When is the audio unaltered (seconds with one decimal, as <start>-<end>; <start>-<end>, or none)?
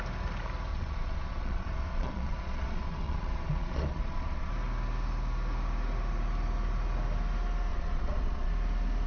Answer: 0.0-0.7; 4.5-7.7; 8.5-9.1